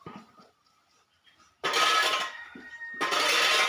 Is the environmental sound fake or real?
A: real